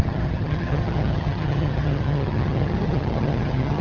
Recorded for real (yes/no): no